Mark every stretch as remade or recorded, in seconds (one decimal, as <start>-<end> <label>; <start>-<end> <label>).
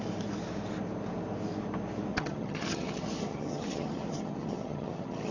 0.0-2.1 recorded; 2.1-5.3 remade